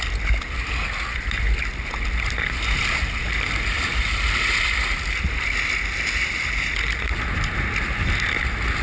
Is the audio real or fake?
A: real